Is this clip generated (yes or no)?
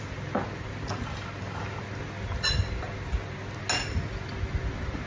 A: no